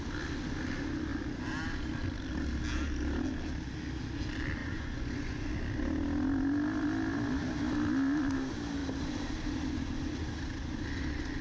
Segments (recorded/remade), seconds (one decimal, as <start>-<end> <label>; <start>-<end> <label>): 0.0-4.6 recorded; 4.6-5.5 remade; 5.5-11.4 recorded